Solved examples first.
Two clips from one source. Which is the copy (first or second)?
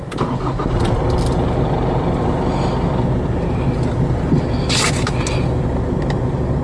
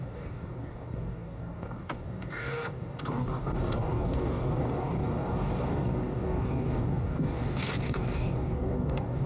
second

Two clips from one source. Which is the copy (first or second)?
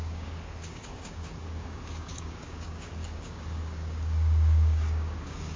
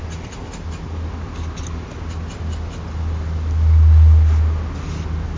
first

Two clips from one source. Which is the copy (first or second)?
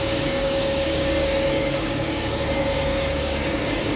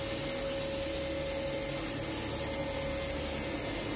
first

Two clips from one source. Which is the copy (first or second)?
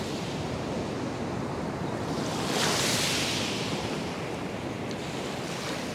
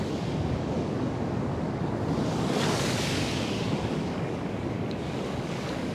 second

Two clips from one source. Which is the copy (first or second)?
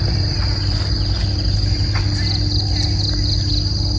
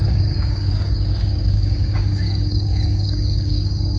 second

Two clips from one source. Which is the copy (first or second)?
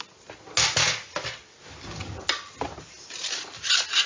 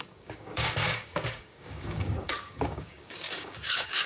second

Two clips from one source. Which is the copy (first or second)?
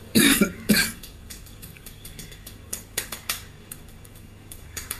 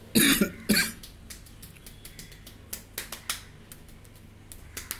first